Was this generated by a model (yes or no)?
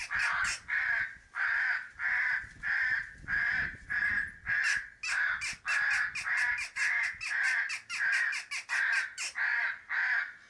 no